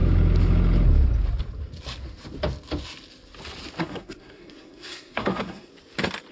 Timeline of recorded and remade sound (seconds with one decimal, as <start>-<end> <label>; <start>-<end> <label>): 0.0-3.8 recorded; 3.8-5.7 remade; 5.7-6.3 recorded